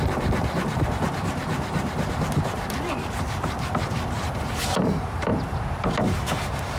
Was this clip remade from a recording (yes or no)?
yes